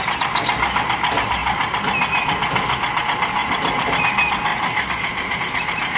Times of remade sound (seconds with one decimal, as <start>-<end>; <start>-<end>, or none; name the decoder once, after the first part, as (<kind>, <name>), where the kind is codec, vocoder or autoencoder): 3.4-4.0 (vocoder, BigVGAN v2); 4.5-5.4